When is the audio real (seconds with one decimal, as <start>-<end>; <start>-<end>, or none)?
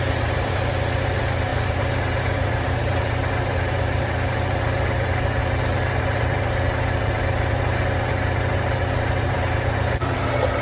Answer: none